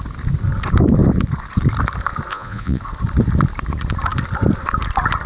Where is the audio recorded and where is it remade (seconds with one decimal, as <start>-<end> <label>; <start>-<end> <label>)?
0.0-2.3 recorded; 2.3-2.8 remade; 2.8-5.3 recorded